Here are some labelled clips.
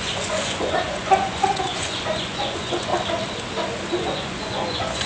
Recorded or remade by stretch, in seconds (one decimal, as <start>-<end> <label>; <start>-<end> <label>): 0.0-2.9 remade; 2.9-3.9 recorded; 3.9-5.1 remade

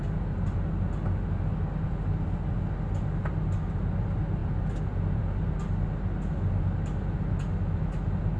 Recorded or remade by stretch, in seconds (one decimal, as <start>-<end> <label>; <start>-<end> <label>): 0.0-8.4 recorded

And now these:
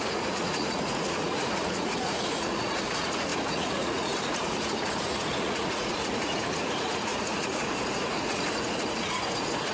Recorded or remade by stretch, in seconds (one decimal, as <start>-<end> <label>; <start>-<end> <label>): 0.0-9.7 remade

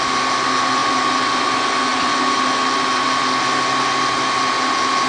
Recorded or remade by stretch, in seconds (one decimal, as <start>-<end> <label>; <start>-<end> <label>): 0.0-5.1 recorded

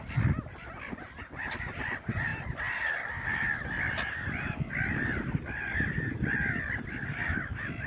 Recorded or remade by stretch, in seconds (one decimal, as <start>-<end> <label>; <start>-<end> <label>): 0.0-7.9 recorded

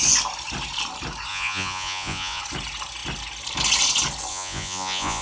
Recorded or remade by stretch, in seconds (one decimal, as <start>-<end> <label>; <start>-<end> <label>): 0.0-1.3 recorded; 1.3-2.4 remade; 2.4-4.3 recorded; 4.3-5.2 remade

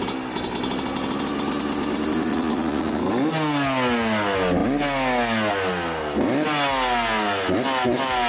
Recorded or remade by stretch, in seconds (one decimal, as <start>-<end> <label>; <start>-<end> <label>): 0.0-2.3 recorded; 2.3-3.0 remade; 3.0-8.3 recorded

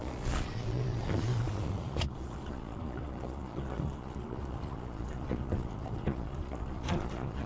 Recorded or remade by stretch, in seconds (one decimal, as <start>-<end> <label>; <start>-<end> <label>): 0.0-7.5 remade